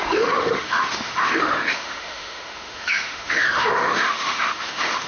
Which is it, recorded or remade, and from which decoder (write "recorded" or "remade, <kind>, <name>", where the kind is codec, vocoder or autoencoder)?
remade, autoencoder, DAC-VAE